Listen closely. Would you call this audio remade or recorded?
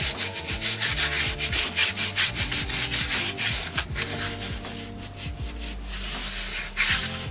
recorded